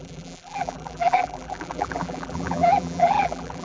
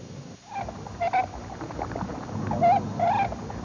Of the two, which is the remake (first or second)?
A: first